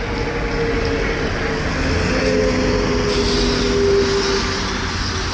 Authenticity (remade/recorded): recorded